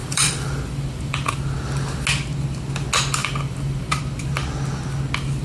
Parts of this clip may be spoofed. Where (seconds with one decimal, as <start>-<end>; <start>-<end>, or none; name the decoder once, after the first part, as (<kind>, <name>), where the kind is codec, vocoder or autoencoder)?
0.0-1.3 (vocoder, BigVGAN v2); 3.2-4.0